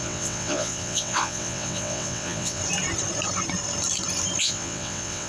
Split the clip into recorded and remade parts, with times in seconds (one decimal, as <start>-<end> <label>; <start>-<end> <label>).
0.0-2.6 remade; 2.6-4.4 recorded; 4.4-5.3 remade